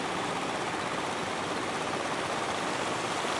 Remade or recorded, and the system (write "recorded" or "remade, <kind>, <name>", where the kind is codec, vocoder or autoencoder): recorded